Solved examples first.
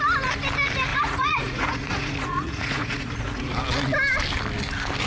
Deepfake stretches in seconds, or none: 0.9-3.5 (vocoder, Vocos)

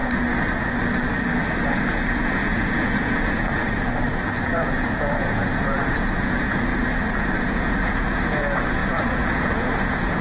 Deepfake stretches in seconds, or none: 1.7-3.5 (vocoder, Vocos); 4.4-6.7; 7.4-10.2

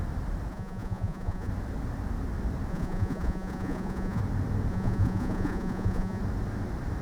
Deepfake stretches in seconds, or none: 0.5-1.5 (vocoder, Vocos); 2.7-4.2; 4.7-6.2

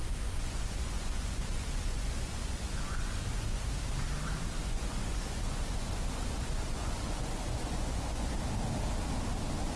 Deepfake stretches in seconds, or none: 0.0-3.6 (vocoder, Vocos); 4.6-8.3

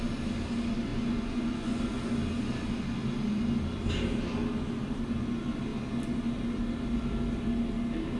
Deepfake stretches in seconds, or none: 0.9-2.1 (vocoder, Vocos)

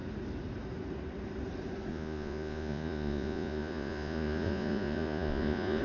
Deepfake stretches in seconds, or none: 1.9-5.8 (vocoder, Vocos)